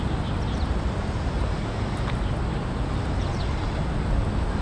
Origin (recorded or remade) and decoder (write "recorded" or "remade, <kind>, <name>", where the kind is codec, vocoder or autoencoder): recorded